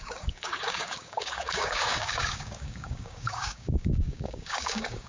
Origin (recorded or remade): remade